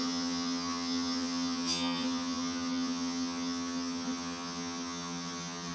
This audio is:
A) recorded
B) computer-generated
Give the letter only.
B